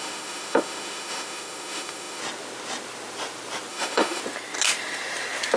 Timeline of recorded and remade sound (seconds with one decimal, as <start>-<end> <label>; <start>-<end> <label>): 0.0-2.2 remade; 2.2-3.7 recorded; 3.7-4.2 remade; 4.2-5.6 recorded